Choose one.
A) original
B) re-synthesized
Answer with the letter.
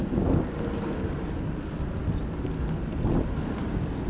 A